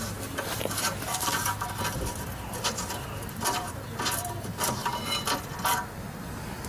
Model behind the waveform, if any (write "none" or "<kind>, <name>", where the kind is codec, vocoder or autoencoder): none